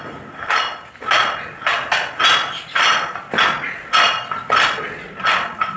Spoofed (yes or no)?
no